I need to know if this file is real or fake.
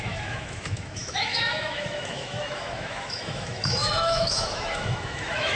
fake